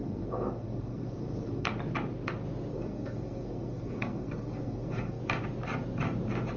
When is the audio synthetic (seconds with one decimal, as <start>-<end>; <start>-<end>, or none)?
0.0-1.7; 2.7-5.2